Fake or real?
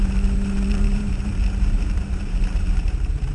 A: fake